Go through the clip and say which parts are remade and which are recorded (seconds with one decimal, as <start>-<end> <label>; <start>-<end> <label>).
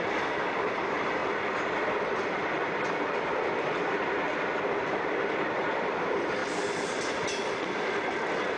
0.0-1.2 remade; 1.2-4.6 recorded; 4.6-6.4 remade; 6.4-8.6 recorded